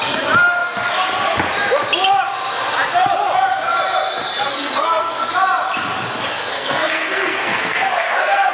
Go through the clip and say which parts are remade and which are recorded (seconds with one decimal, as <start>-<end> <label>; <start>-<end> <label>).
0.0-4.5 recorded; 4.5-5.3 remade; 5.3-6.3 recorded; 6.3-8.5 remade